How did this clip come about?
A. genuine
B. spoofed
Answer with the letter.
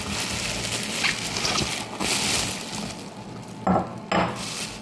A